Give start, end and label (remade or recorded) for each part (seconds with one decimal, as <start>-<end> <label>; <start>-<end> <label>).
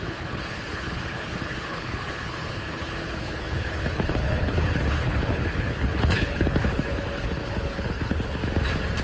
0.0-8.4 remade; 8.4-9.0 recorded